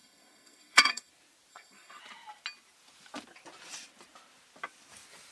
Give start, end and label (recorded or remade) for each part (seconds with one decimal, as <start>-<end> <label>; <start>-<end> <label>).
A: 0.0-1.1 remade; 1.1-1.5 recorded; 1.5-2.0 remade; 2.0-5.3 recorded

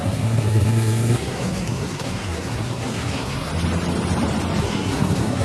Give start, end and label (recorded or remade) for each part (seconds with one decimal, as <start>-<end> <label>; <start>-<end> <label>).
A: 0.0-3.5 remade; 3.5-4.6 recorded; 4.6-5.4 remade